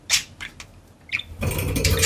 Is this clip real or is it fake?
real